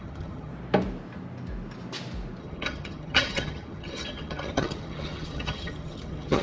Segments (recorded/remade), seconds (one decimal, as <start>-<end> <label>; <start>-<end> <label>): 0.0-0.5 remade; 0.5-2.4 recorded; 2.4-6.4 remade